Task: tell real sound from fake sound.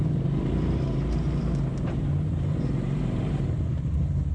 fake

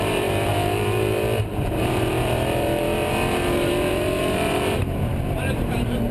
fake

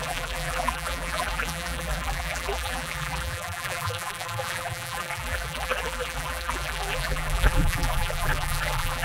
fake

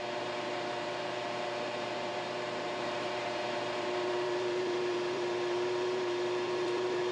fake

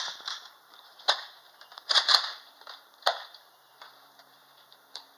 fake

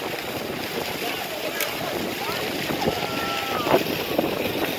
fake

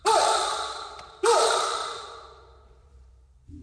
fake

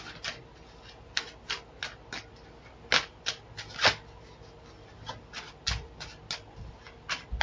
real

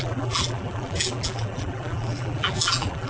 fake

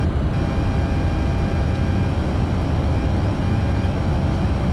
real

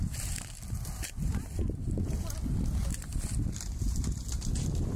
real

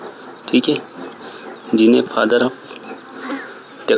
real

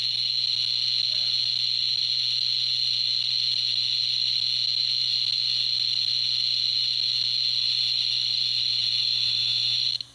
real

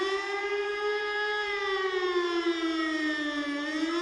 fake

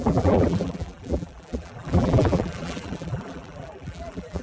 fake